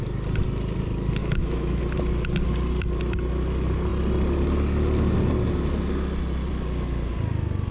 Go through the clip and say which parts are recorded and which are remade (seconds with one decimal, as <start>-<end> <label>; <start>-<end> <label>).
0.0-1.2 recorded; 1.2-1.8 remade; 1.8-7.7 recorded